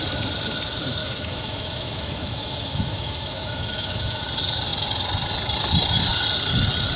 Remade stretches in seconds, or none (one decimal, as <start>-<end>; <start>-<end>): 1.0-4.2